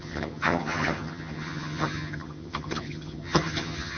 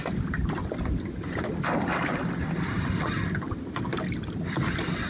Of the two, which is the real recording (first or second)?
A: second